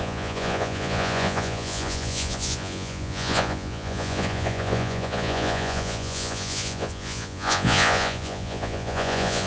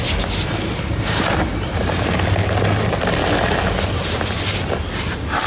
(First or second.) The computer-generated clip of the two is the first